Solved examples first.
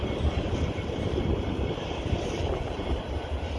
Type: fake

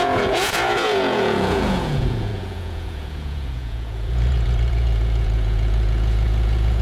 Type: fake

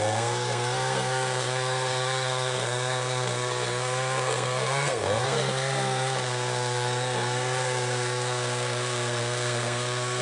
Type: fake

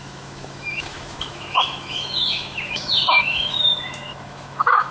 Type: fake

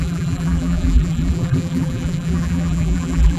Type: fake